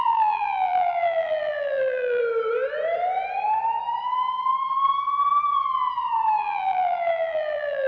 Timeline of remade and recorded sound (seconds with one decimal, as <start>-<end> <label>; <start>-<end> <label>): 0.0-2.2 remade; 2.2-6.4 recorded; 6.4-7.9 remade